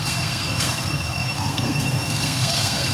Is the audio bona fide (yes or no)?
no